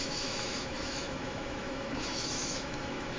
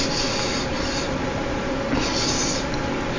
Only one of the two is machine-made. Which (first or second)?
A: first